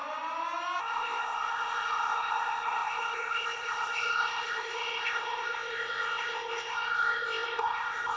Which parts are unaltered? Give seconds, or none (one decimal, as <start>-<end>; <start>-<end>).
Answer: 0.0-0.8